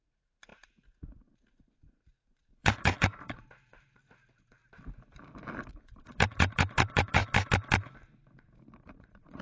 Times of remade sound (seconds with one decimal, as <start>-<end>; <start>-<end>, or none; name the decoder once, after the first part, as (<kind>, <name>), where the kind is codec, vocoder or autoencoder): 0.0-4.6 (vocoder, Vocos); 5.7-7.2; 8.8-9.4